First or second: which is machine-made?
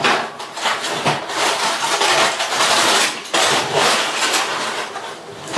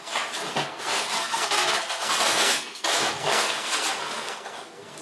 second